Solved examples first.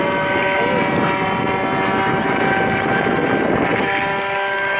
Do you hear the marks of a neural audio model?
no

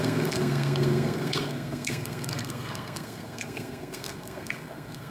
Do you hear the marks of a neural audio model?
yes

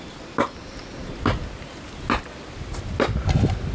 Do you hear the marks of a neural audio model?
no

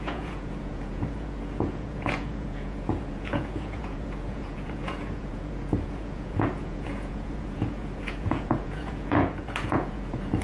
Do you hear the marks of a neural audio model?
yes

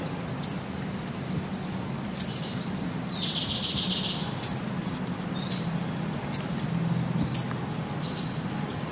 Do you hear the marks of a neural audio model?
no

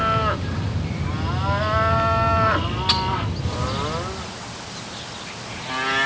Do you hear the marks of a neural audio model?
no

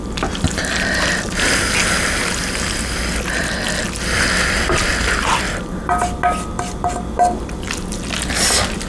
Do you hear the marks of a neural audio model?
no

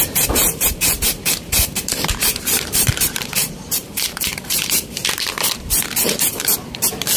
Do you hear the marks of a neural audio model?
yes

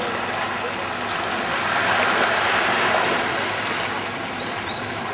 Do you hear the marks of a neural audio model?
no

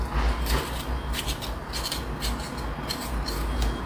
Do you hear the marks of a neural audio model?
no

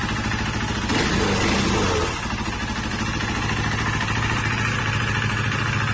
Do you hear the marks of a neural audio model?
no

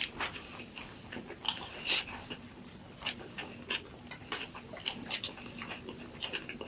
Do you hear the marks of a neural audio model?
no